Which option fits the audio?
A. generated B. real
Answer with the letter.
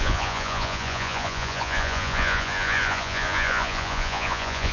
A